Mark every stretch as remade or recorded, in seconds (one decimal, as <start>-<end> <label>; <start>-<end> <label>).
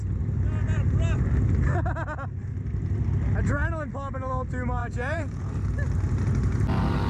0.0-4.8 recorded; 4.8-5.5 remade; 5.5-7.1 recorded